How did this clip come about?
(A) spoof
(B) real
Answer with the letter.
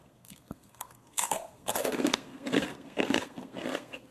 A